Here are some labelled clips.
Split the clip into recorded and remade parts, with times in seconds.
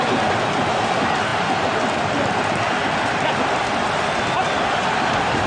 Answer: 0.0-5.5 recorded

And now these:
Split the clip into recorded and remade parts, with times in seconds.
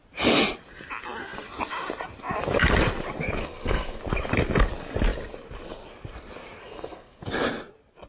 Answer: 0.0-3.4 recorded; 3.4-4.0 remade; 4.0-6.6 recorded; 6.6-7.2 remade; 7.2-8.1 recorded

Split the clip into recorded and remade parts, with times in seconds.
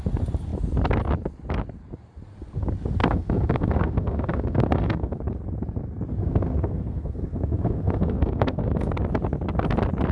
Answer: 0.0-3.0 recorded; 3.0-5.2 remade; 5.2-6.2 recorded; 6.2-8.9 remade; 8.9-10.1 recorded